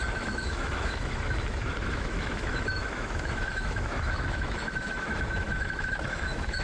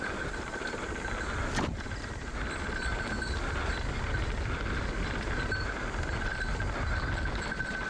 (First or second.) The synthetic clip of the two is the first